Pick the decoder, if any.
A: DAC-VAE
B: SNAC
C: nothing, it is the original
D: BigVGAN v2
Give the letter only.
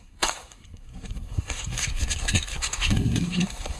B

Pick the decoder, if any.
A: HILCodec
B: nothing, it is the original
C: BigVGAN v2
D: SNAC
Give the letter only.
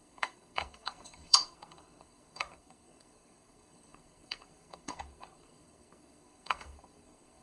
D